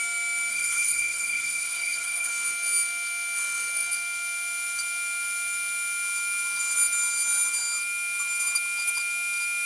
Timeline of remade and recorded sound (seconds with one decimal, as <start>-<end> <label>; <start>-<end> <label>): 0.0-0.5 recorded; 0.5-2.3 remade; 2.3-9.7 recorded